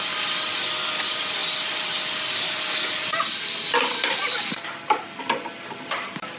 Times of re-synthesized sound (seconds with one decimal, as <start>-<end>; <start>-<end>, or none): none